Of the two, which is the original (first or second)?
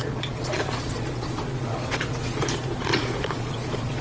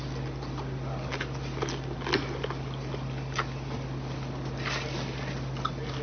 second